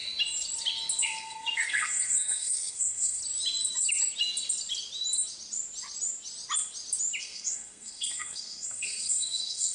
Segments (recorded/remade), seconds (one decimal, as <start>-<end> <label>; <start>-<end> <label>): 0.0-1.0 recorded; 1.0-3.2 remade; 3.2-7.2 recorded; 7.2-9.7 remade